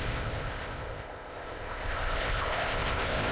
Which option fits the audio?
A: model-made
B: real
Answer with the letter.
A